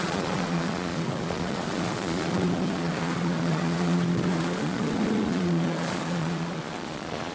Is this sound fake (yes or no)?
yes